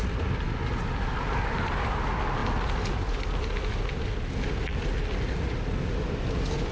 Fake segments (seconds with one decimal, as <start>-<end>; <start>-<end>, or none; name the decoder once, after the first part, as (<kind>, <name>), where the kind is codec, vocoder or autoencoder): none